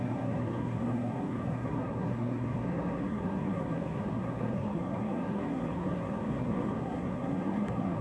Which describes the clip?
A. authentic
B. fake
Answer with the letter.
B